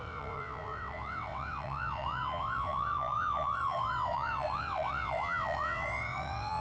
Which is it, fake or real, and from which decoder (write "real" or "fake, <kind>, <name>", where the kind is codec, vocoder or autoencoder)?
fake, vocoder, WaveNeXt